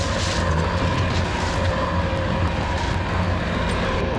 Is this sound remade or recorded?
recorded